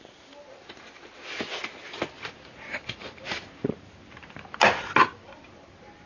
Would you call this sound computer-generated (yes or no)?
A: no